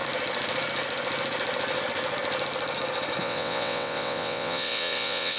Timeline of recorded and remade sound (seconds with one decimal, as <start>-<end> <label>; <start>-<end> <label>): 0.0-3.2 recorded; 3.2-5.4 remade